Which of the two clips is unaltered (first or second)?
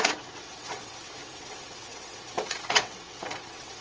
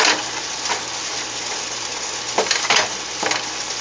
second